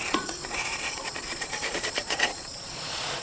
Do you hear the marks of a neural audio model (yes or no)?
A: yes